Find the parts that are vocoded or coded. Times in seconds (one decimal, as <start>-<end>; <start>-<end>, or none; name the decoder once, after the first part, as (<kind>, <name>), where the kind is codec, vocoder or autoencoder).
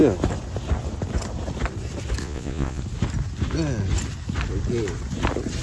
2.2-2.8 (vocoder, Vocos)